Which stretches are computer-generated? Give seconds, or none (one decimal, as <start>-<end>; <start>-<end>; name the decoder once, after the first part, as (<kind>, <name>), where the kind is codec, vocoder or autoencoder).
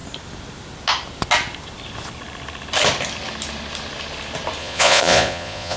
4.6-5.8 (vocoder, Vocos)